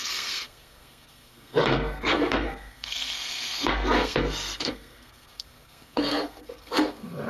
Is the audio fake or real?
fake